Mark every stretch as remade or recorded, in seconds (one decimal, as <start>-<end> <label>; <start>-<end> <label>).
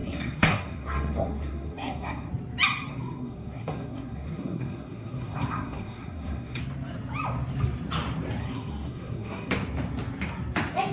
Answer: 0.0-2.3 remade; 2.3-2.9 recorded; 2.9-6.6 remade; 6.6-8.4 recorded; 8.4-9.5 remade; 9.5-10.9 recorded